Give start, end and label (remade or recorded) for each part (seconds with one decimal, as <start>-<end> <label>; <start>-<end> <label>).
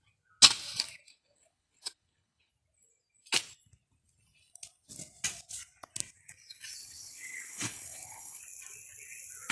0.0-1.1 recorded; 1.1-2.5 remade; 2.5-6.8 recorded; 6.8-8.4 remade; 8.4-9.5 recorded